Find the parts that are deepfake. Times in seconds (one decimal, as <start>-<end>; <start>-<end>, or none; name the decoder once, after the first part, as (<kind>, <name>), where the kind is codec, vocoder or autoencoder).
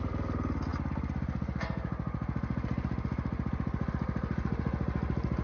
none